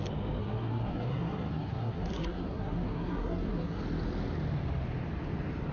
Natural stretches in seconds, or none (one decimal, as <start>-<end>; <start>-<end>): 0.0-0.4; 3.8-5.7